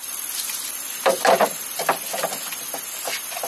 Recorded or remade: recorded